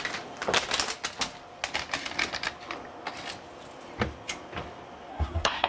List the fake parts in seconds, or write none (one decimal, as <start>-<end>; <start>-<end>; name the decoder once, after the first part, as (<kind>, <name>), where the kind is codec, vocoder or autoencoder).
5.1-5.7 (codec, SNAC)